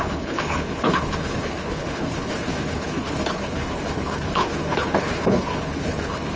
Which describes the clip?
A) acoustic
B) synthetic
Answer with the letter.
B